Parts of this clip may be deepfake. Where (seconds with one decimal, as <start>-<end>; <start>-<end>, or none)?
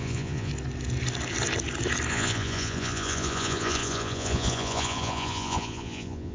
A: 0.0-0.5; 2.1-6.3